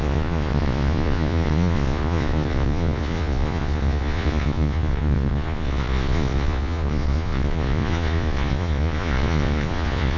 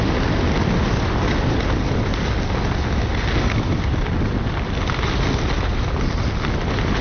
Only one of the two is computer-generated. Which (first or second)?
first